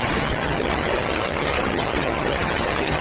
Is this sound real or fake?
fake